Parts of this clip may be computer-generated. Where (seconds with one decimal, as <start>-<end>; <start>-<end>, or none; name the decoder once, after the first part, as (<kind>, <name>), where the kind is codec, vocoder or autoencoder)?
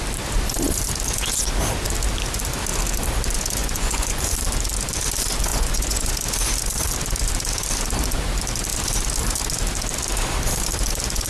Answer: 3.6-4.3 (vocoder, Vocos); 5.5-6.1